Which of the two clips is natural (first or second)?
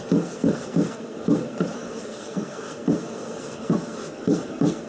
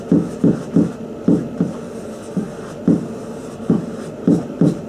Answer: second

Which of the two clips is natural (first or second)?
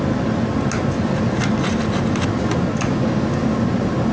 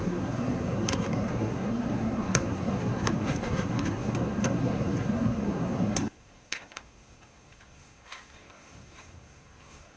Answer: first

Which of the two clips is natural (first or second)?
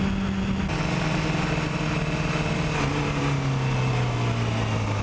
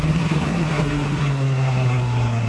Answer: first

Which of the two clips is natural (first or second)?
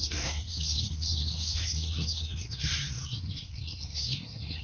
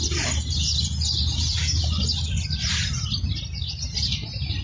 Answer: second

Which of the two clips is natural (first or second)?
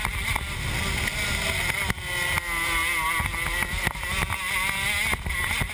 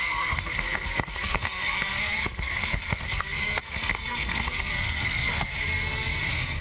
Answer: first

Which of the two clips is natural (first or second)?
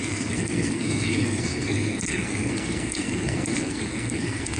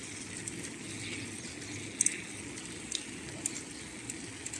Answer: second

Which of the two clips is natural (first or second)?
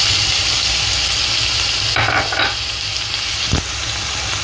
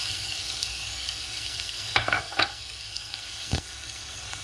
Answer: first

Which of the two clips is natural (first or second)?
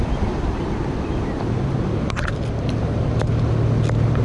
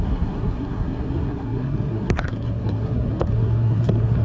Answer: first